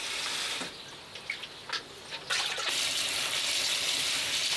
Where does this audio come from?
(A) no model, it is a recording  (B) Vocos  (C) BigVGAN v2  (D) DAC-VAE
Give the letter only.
A